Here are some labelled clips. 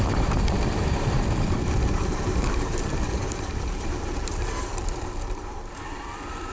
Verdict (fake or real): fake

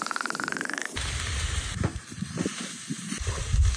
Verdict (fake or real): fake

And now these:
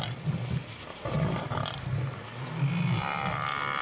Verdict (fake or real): real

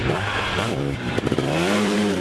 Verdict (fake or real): fake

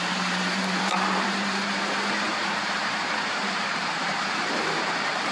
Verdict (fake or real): fake